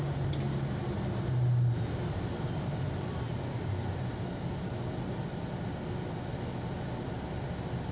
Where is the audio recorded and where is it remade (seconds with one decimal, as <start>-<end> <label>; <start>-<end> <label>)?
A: 0.0-7.9 recorded